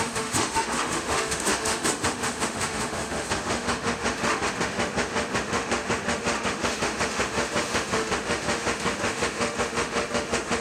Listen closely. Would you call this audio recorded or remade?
remade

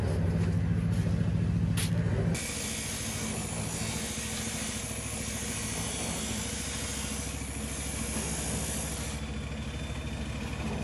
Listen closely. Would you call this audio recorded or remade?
recorded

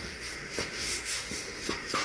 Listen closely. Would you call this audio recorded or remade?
remade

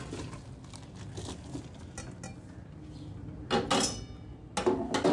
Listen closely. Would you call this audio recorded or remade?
recorded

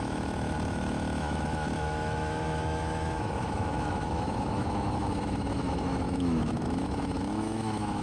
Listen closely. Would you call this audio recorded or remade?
remade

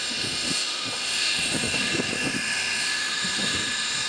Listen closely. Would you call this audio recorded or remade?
remade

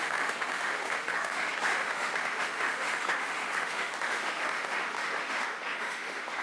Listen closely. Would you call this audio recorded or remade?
remade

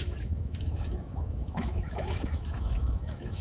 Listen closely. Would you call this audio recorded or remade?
remade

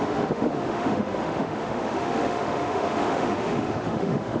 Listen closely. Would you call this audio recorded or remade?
remade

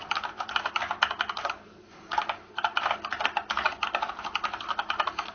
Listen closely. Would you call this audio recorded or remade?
recorded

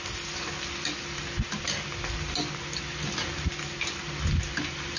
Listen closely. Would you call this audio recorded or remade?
recorded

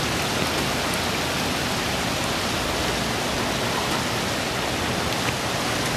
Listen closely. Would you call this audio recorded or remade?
recorded